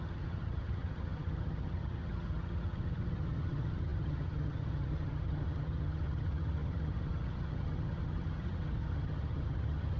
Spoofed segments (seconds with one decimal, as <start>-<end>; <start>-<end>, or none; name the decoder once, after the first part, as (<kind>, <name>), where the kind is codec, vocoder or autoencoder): 0.0-10.0 (vocoder, HiFi-GAN)